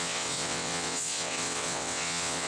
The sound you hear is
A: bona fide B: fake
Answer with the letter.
B